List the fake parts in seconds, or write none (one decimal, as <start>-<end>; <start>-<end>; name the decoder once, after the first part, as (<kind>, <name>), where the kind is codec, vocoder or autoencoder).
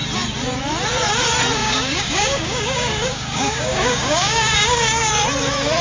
1.6-5.1 (codec, DAC)